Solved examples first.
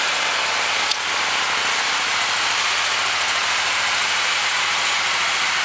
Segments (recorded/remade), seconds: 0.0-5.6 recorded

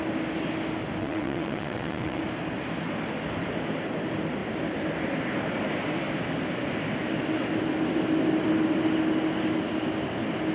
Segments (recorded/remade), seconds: 0.0-1.0 recorded; 1.0-2.2 remade; 2.2-10.5 recorded

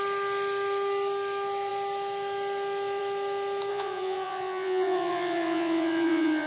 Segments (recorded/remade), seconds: 0.0-3.7 recorded; 3.7-6.5 remade

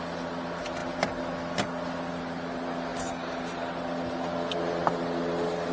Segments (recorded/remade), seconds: 0.0-5.7 recorded

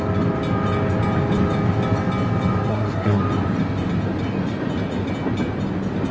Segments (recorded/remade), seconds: 0.0-2.7 recorded; 2.7-3.2 remade; 3.2-6.1 recorded

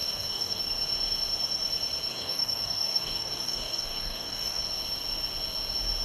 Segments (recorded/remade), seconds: 0.0-0.6 remade; 0.6-2.1 recorded; 2.1-4.6 remade; 4.6-6.0 recorded

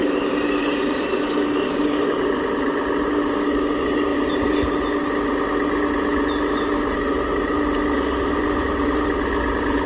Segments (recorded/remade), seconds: 0.0-1.1 remade; 1.1-4.1 recorded; 4.1-4.7 remade; 4.7-8.4 recorded; 8.4-9.0 remade; 9.0-9.9 recorded

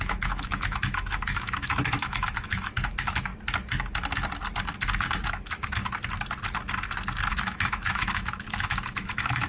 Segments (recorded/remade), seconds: 0.0-3.3 remade; 3.3-5.3 recorded; 5.3-5.8 remade; 5.8-7.3 recorded; 7.3-9.5 remade